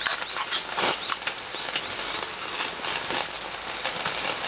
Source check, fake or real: real